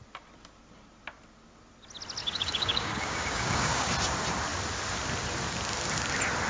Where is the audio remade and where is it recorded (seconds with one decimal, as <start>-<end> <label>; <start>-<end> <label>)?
0.0-2.2 recorded; 2.2-3.9 remade; 3.9-6.5 recorded